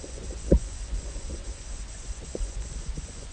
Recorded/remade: remade